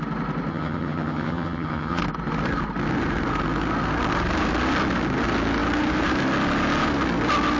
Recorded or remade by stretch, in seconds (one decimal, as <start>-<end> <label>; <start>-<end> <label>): 0.0-0.5 recorded; 0.5-2.0 remade; 2.0-7.6 recorded